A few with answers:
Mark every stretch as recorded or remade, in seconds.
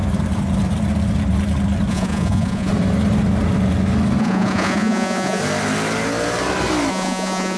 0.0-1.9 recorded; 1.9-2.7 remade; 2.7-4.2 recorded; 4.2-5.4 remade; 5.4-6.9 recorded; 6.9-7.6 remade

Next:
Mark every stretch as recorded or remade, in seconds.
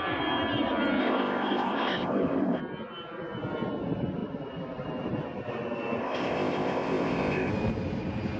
0.0-1.0 recorded; 1.0-2.6 remade; 2.6-6.0 recorded; 6.0-7.5 remade; 7.5-8.4 recorded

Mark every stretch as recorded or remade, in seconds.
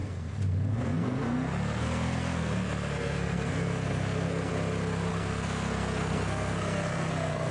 0.0-4.5 remade; 4.5-5.1 recorded; 5.1-7.5 remade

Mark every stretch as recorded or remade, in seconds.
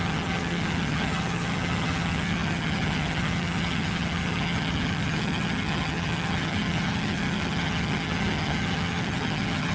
0.0-9.7 remade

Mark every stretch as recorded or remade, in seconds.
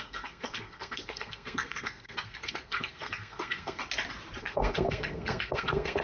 0.0-3.8 remade; 3.8-4.4 recorded; 4.4-6.0 remade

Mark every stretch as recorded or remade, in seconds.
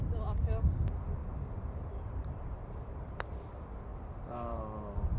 0.0-1.2 recorded; 1.2-3.2 remade; 3.2-3.9 recorded; 3.9-4.6 remade; 4.6-5.2 recorded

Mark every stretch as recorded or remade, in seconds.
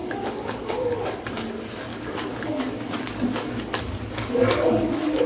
0.0-1.2 remade; 1.2-1.9 recorded; 1.9-5.3 remade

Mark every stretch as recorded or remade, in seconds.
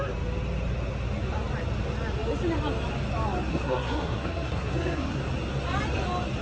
0.0-3.5 recorded; 3.5-5.2 remade; 5.2-6.4 recorded